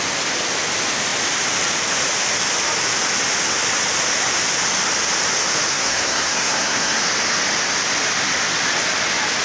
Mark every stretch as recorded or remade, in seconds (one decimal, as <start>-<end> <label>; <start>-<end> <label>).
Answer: 0.0-5.7 recorded; 5.7-7.0 remade; 7.0-9.4 recorded